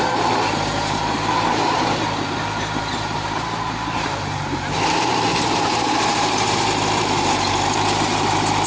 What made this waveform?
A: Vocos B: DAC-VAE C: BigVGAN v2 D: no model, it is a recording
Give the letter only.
C